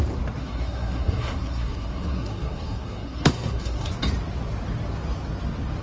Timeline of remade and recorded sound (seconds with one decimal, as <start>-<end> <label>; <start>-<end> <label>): 0.0-0.4 recorded; 0.4-3.9 remade; 3.9-5.8 recorded